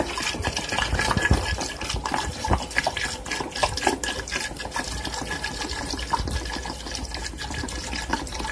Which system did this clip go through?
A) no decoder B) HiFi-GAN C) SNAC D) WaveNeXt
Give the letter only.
A